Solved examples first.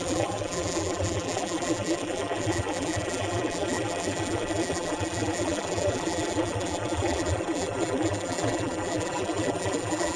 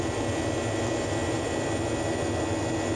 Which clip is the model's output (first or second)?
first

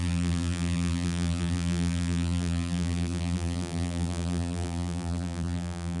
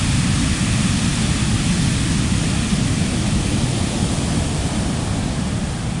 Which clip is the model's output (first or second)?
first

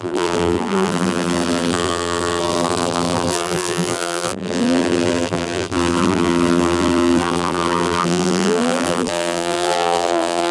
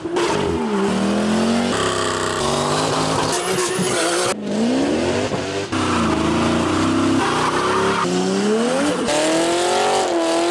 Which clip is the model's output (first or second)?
first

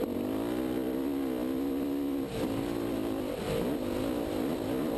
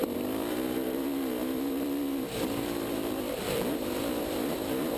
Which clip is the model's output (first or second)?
second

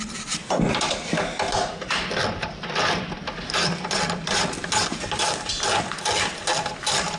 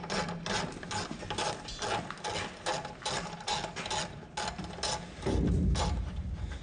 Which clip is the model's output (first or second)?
first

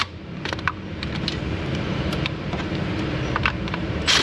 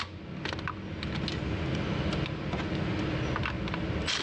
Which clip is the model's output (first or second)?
first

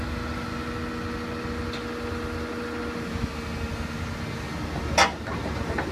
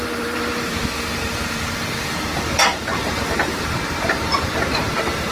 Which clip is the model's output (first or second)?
second